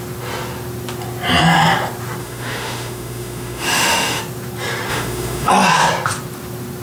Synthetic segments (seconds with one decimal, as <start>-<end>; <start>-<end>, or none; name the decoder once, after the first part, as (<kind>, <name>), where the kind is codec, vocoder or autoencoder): 2.2-4.2 (autoencoder, DAC-VAE); 4.9-5.5